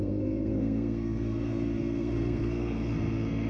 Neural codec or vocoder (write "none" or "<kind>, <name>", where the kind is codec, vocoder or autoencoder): codec, SNAC